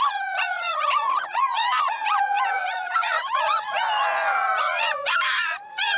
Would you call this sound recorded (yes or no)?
no